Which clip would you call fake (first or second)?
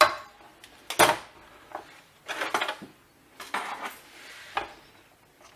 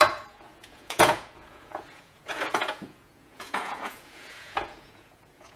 second